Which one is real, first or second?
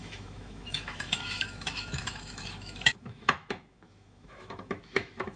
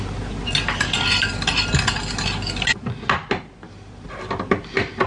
second